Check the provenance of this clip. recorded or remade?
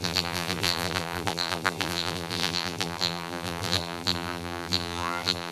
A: remade